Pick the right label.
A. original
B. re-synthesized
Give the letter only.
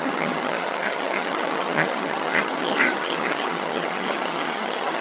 B